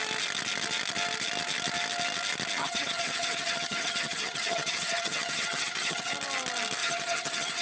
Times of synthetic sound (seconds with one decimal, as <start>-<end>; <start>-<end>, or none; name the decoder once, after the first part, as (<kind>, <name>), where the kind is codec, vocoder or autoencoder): 2.6-6.1 (vocoder, HiFi-GAN); 6.8-7.6